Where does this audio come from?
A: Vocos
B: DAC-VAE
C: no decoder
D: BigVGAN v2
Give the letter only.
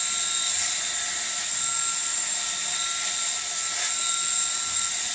C